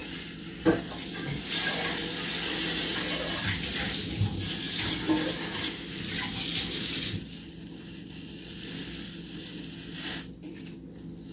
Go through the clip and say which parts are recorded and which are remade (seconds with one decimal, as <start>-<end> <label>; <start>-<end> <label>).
0.0-11.3 recorded